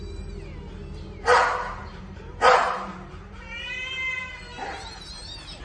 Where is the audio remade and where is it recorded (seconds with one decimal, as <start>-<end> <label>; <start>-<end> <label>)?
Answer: 0.0-1.8 recorded; 1.8-5.6 remade